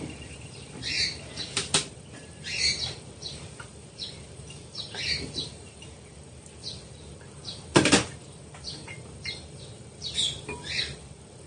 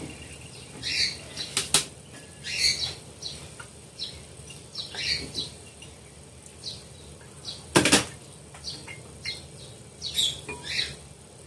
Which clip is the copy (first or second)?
first